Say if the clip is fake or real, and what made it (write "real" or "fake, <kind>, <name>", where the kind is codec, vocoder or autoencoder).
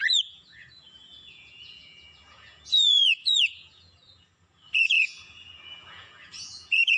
fake, vocoder, Vocos